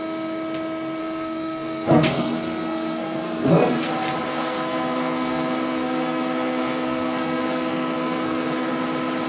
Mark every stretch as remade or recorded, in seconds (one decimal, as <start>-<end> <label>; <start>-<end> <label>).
0.0-1.0 recorded; 1.0-3.9 remade; 3.9-4.3 recorded; 4.3-8.7 remade; 8.7-9.3 recorded